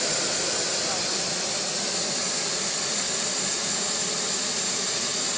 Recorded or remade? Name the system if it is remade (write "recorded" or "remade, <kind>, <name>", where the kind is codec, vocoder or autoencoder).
recorded